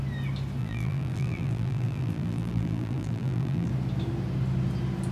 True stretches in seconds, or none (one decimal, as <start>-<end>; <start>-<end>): 0.0-0.6; 3.7-5.1

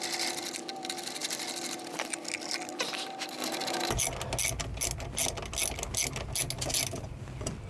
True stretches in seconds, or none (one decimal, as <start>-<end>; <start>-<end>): 0.0-3.4; 4.0-7.7

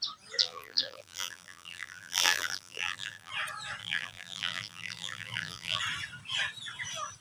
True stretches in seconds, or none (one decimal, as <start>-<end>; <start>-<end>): 0.0-0.4; 3.3-3.8; 5.8-7.2

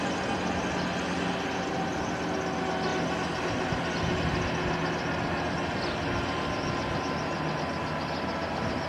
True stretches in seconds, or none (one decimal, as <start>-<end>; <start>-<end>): 0.0-8.9

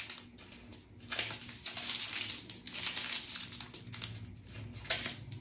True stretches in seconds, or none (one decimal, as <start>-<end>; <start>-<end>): 0.0-5.4

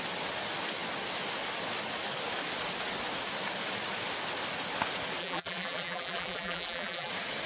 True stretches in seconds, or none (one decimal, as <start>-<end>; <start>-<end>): 0.0-5.2; 7.1-7.5

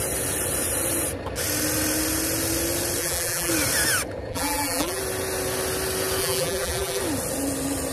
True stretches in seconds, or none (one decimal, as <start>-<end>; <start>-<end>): 0.0-3.0; 3.5-4.3; 5.0-6.2; 7.0-7.9